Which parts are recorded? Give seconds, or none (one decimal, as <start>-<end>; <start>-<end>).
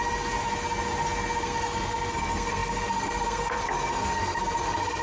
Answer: 0.0-1.4